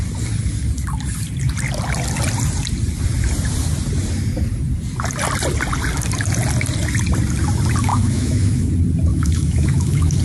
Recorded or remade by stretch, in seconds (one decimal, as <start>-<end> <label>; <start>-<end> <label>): 0.0-7.9 recorded; 7.9-8.7 remade; 8.7-9.1 recorded; 9.1-10.2 remade